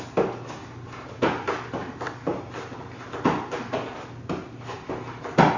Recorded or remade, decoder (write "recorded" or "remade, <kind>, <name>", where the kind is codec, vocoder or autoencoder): recorded